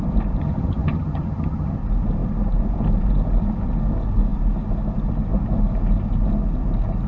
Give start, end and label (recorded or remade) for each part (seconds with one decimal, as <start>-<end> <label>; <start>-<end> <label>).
0.0-0.4 recorded; 0.4-1.8 remade; 1.8-7.1 recorded